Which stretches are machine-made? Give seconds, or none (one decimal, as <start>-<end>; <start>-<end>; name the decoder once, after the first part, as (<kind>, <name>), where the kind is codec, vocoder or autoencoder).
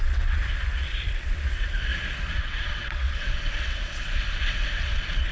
0.0-0.4 (vocoder, WaveNeXt); 1.1-1.9; 2.4-5.3